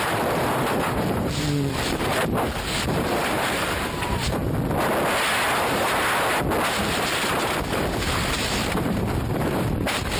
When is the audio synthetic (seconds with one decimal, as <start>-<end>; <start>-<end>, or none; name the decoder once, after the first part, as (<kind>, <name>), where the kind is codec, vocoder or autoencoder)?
0.0-2.1 (vocoder, BigVGAN v2); 2.8-4.4; 6.7-10.2